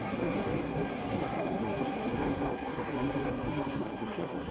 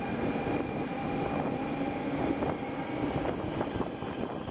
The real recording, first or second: second